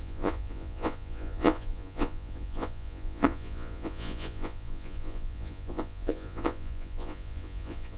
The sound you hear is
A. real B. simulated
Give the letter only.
B